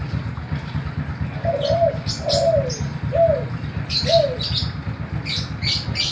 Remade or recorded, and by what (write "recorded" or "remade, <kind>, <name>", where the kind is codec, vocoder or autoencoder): recorded